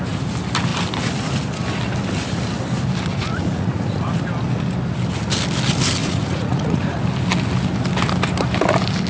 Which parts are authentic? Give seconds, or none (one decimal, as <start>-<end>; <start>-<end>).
0.0-3.1; 4.3-6.0; 7.0-9.1